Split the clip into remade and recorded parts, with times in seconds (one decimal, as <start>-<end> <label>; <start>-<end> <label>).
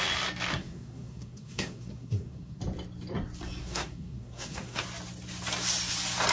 0.0-0.5 recorded; 0.5-2.6 remade; 2.6-3.6 recorded; 3.6-4.8 remade; 4.8-6.3 recorded